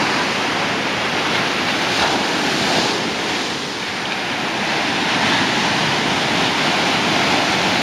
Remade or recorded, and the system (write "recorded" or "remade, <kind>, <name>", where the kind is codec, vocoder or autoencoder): recorded